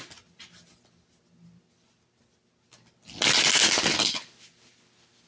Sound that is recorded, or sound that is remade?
recorded